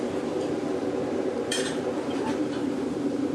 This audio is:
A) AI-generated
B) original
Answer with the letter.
A